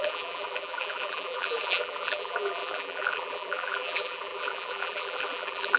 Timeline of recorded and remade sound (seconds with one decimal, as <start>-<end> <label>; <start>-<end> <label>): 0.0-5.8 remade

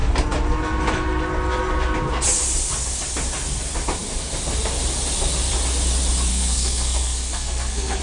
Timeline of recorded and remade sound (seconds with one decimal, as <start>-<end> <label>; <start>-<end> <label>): 0.0-6.3 recorded; 6.3-8.0 remade

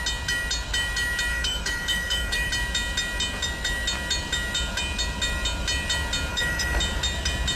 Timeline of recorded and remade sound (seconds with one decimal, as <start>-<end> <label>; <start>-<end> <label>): 0.0-1.3 recorded; 1.3-2.5 remade; 2.5-6.3 recorded; 6.3-6.8 remade; 6.8-7.6 recorded

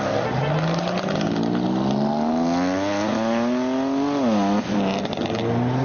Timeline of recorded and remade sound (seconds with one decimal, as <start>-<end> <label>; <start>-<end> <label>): 0.0-5.8 recorded

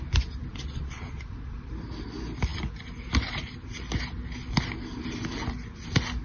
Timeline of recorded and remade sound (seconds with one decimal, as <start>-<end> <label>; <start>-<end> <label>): 0.0-0.5 recorded; 0.5-1.7 remade; 1.7-6.2 recorded

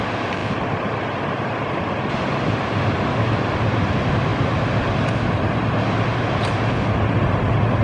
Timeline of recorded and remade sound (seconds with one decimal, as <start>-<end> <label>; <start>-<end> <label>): 0.0-7.8 recorded